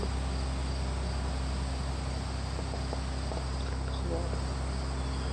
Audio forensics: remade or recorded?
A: recorded